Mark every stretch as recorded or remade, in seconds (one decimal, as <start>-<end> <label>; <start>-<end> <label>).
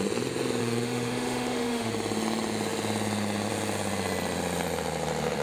0.0-0.6 recorded; 0.6-1.9 remade; 1.9-5.4 recorded